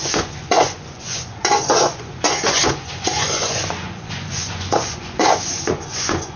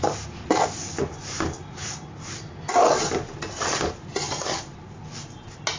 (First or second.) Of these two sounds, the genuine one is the second